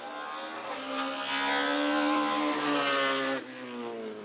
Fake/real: real